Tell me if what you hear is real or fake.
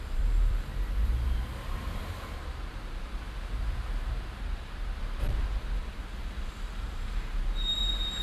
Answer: fake